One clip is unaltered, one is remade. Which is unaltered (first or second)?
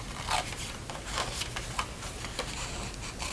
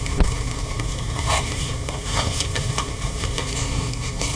first